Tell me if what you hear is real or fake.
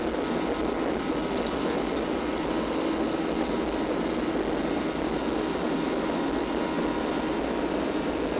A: real